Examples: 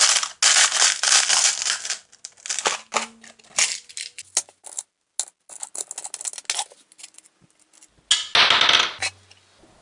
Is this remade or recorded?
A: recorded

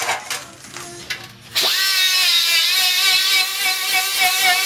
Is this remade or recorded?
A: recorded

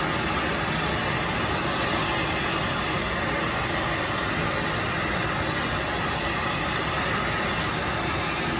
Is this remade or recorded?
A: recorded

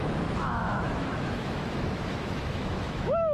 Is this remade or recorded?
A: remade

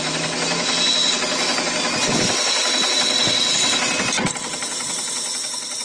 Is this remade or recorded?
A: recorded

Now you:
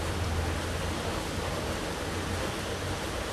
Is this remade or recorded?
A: recorded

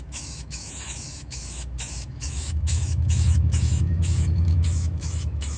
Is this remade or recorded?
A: remade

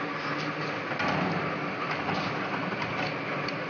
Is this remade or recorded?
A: recorded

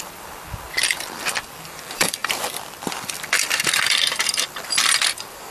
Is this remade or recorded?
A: remade